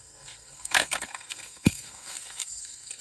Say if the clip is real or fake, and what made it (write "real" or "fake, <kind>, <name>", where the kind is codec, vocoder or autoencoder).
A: fake, codec, SNAC